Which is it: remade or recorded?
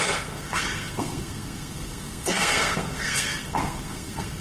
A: remade